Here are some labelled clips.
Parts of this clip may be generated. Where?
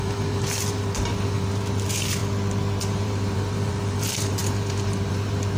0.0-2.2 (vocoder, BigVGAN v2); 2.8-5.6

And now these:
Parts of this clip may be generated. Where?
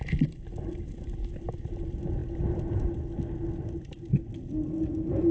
none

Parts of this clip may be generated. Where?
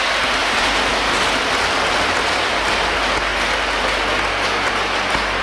0.4-0.9 (vocoder, BigVGAN v2)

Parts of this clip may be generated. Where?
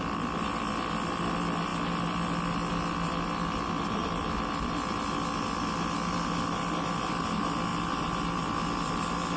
none